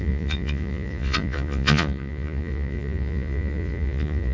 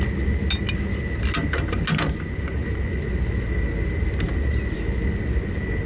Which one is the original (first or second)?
second